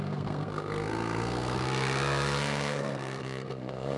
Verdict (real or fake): fake